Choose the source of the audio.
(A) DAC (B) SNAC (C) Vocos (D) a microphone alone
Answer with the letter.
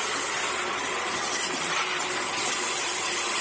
D